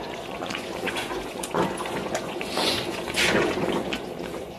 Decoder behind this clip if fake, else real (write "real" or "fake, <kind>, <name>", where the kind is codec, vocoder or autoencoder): fake, vocoder, Vocos